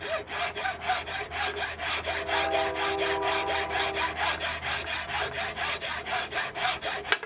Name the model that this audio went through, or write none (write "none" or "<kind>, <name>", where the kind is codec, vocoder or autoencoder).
none